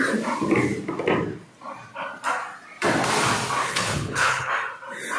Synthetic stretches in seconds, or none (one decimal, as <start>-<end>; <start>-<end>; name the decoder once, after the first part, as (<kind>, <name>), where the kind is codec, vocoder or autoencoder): 3.6-4.5 (codec, HILCodec)